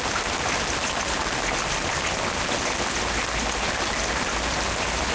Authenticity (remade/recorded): recorded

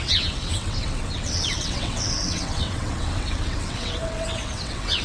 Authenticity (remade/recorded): remade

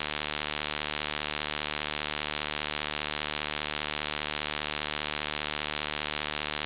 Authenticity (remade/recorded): recorded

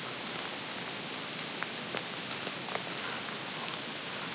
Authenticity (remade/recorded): recorded